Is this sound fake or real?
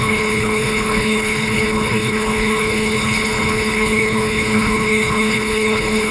fake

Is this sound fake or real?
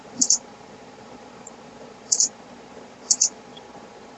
fake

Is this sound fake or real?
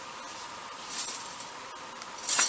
real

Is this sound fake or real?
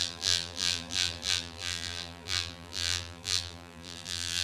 fake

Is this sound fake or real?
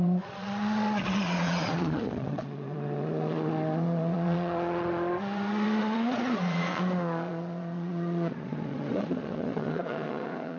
fake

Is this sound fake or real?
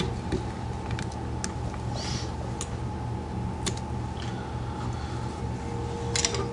real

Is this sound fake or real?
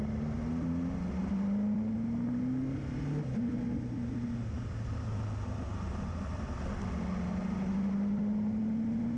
real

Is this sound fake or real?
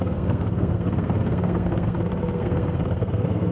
fake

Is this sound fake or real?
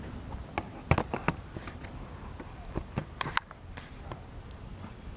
real